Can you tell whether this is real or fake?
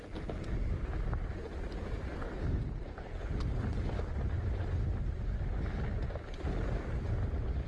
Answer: real